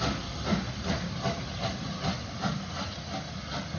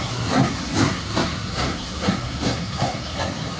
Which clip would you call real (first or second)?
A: first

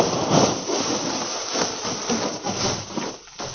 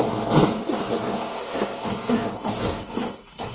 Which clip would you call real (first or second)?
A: first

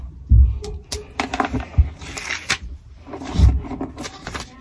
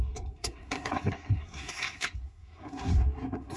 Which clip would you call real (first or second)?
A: first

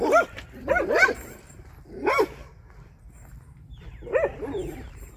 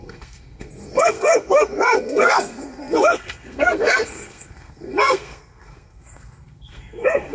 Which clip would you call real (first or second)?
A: first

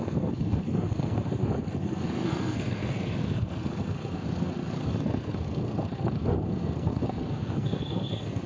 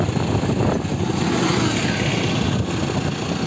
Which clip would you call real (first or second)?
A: second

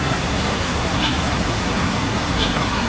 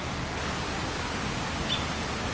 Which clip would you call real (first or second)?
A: second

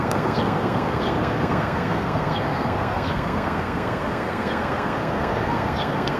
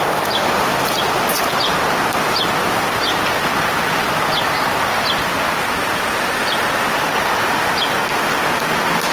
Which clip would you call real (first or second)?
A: second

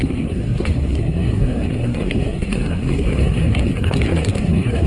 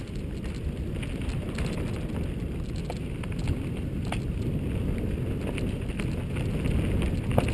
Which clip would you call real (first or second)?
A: second